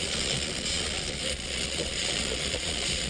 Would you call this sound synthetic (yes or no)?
yes